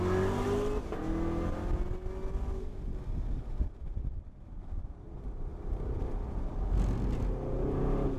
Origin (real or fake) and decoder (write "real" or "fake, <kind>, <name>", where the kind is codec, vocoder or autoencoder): real